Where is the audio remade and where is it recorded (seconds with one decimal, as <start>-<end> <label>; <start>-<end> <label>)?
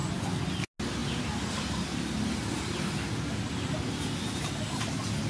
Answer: 0.0-5.3 recorded